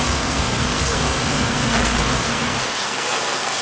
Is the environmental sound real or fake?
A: fake